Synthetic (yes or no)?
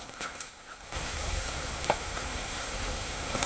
yes